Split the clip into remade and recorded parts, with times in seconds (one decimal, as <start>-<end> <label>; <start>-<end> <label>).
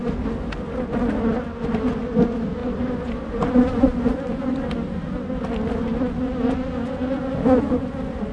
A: 0.0-8.3 recorded